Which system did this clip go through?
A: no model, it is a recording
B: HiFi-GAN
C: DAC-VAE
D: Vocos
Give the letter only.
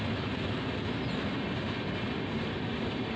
A